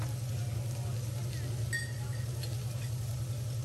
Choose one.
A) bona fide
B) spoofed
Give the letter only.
A